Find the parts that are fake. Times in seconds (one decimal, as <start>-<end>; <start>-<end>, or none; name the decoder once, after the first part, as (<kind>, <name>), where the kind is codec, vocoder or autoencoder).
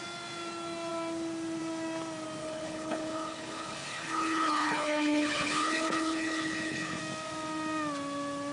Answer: 2.4-7.0 (codec, HILCodec)